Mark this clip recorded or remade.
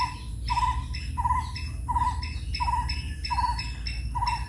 recorded